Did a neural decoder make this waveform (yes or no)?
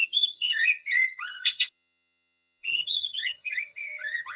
yes